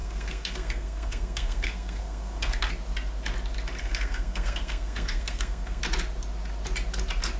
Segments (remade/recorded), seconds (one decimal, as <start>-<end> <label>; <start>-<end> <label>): 0.0-2.7 remade; 2.7-3.8 recorded; 3.8-5.8 remade; 5.8-7.4 recorded